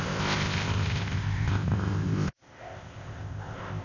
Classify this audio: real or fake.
fake